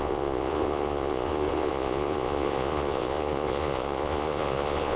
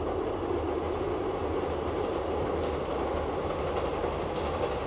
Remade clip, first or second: first